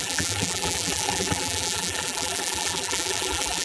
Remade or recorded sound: remade